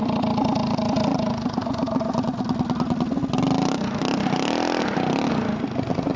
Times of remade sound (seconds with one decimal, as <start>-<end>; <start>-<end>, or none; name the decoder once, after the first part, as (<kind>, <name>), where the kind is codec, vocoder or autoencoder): none